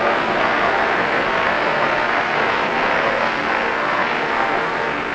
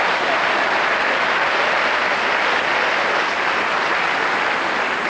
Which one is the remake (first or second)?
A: first